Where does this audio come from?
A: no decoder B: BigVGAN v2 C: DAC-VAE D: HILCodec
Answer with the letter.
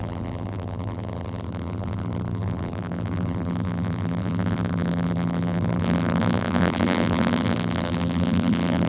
B